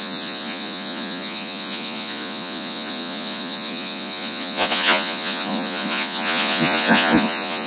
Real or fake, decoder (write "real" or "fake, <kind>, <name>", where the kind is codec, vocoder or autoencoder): fake, vocoder, Vocos